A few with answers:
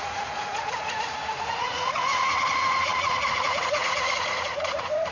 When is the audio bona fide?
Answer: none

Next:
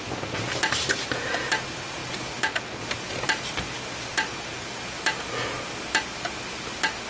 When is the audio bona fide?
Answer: 0.0-7.1

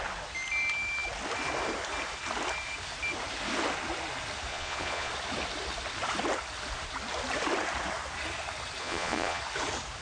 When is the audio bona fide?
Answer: 0.0-4.5; 5.1-8.8; 9.4-10.0